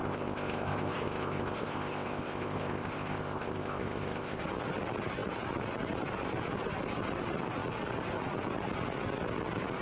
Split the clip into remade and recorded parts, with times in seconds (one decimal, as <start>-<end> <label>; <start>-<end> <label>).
0.0-4.4 remade; 4.4-9.8 recorded